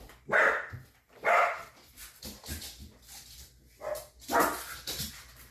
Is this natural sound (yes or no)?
yes